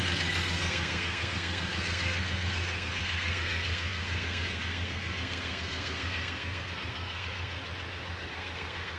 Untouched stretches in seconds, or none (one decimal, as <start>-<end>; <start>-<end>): 7.6-8.2